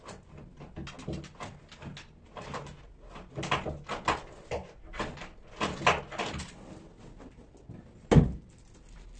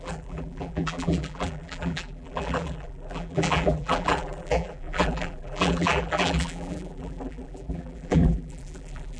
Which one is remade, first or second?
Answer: second